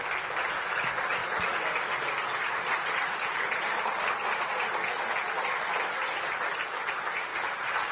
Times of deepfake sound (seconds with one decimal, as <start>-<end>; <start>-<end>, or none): none